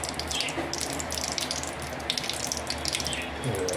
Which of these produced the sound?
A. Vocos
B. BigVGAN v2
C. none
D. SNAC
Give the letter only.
C